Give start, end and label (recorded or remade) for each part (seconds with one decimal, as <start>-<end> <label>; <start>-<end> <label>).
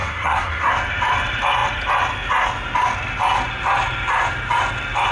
0.0-0.7 remade; 0.7-5.1 recorded